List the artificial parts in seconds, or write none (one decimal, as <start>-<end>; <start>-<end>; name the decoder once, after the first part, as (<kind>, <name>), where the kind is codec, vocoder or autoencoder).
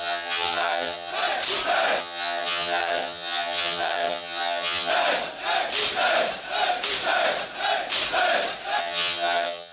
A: 0.0-1.1 (vocoder, HiFi-GAN); 2.0-4.9; 8.8-9.7